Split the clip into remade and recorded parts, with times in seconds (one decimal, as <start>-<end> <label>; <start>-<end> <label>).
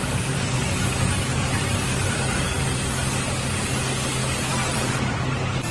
0.0-0.6 remade; 0.6-1.7 recorded; 1.7-2.6 remade; 2.6-4.2 recorded; 4.2-4.9 remade; 4.9-5.7 recorded